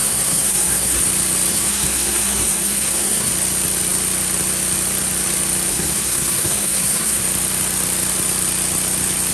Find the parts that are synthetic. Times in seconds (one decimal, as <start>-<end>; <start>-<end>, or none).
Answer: 0.0-1.0; 1.5-3.3; 5.7-7.2